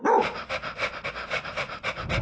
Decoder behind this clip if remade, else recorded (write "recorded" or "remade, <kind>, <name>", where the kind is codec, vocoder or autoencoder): recorded